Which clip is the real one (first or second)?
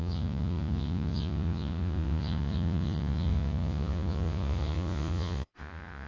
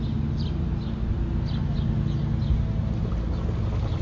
second